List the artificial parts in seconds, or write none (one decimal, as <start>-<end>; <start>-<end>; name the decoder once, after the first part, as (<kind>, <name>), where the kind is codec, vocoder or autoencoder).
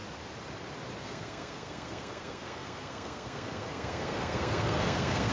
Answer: 1.0-5.3 (codec, SNAC)